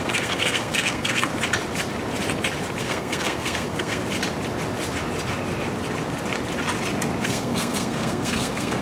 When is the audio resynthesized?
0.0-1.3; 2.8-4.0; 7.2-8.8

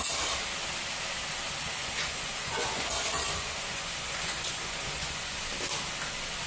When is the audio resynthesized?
1.8-5.5

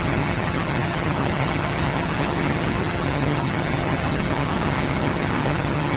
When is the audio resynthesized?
0.0-6.0

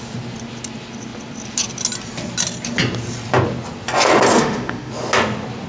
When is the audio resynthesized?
4.3-4.9

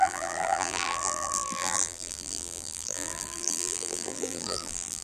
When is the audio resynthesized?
0.0-5.0

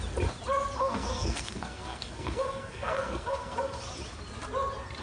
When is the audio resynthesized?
0.8-3.8

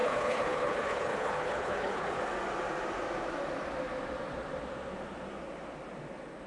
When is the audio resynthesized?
0.0-2.2

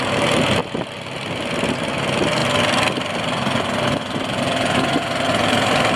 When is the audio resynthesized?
none